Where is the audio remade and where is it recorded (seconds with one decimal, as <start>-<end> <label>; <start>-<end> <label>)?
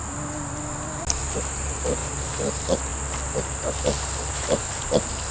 0.0-5.3 recorded